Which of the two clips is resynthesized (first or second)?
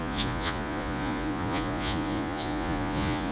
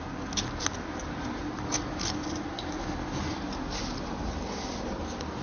first